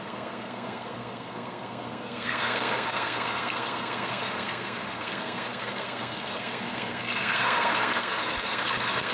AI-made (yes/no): yes